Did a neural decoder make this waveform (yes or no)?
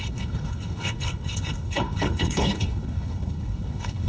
yes